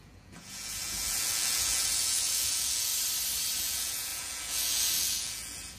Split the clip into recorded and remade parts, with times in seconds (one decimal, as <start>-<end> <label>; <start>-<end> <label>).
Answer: 0.0-2.9 remade; 2.9-3.6 recorded; 3.6-5.8 remade